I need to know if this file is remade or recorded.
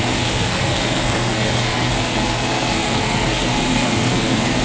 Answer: remade